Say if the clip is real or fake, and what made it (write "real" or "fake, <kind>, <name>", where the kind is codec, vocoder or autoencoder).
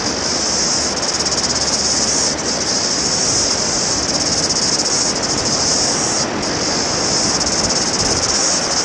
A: real